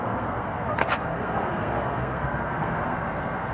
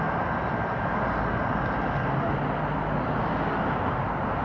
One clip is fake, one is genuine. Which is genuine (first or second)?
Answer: second